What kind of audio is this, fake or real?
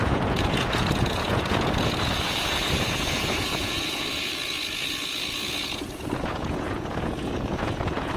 fake